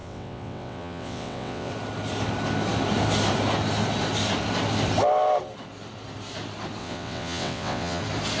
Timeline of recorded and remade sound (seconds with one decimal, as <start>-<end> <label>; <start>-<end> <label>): 0.0-1.7 remade; 1.7-6.8 recorded; 6.8-8.0 remade; 8.0-8.4 recorded